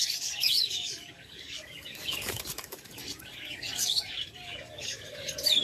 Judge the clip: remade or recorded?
remade